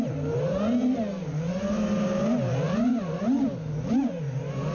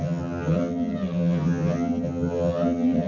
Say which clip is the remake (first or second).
second